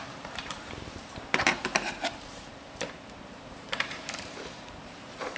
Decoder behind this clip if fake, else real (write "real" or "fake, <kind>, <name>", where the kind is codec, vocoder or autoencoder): fake, vocoder, BigVGAN v2